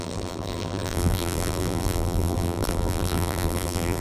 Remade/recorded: remade